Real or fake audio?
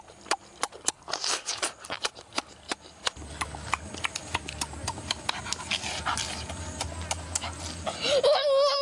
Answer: real